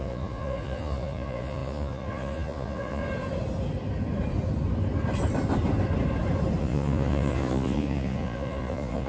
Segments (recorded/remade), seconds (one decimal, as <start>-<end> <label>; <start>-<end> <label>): 0.0-3.0 remade; 3.0-6.6 recorded; 6.6-9.1 remade